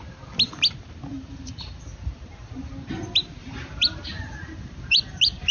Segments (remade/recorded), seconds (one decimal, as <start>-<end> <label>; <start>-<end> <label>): 0.0-1.1 recorded; 1.1-2.7 remade; 2.7-3.4 recorded; 3.4-5.5 remade